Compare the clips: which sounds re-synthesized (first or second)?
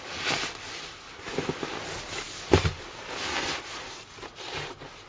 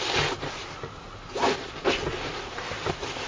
second